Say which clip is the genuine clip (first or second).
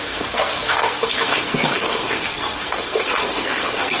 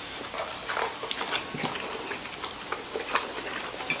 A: second